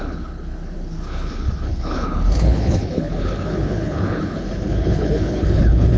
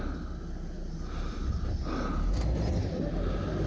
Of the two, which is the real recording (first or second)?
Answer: second